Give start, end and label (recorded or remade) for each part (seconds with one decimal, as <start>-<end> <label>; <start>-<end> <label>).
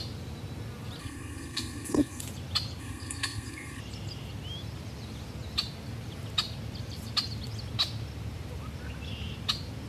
0.0-1.0 recorded; 1.0-2.2 remade; 2.2-2.8 recorded; 2.8-3.8 remade; 3.8-9.9 recorded